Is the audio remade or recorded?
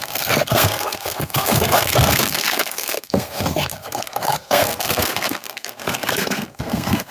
remade